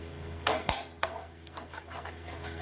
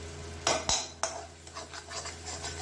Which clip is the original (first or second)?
second